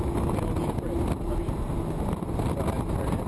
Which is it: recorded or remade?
recorded